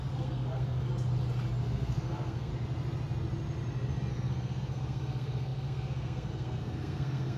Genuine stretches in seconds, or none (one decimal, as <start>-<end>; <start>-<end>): 0.9-1.6; 2.5-4.1